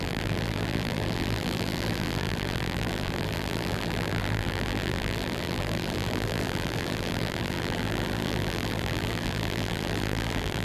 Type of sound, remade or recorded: remade